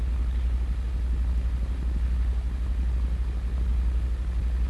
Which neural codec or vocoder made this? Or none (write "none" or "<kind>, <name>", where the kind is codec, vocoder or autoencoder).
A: none